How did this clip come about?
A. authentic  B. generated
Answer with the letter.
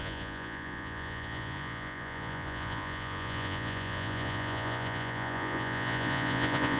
B